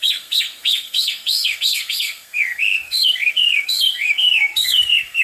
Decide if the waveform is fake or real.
fake